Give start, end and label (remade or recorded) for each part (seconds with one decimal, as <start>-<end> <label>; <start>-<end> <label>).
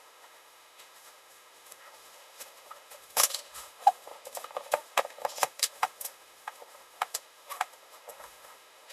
0.0-8.9 remade